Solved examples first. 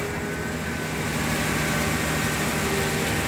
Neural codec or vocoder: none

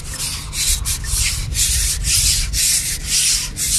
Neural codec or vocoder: none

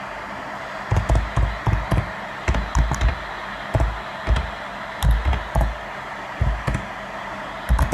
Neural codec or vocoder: none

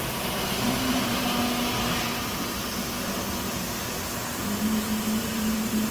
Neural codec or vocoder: none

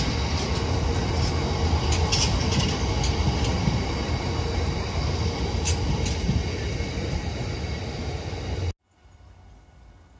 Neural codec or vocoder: none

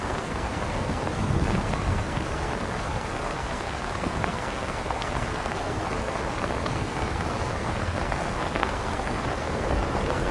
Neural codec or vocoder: codec, SNAC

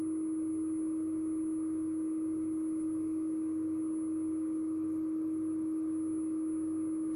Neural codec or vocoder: none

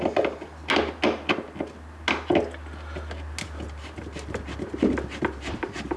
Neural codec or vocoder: none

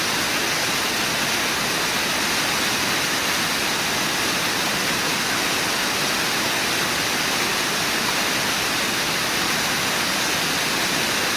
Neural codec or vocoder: none